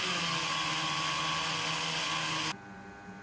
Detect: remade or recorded recorded